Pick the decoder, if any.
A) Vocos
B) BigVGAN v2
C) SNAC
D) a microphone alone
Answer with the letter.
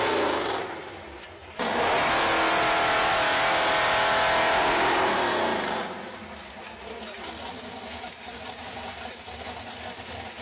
D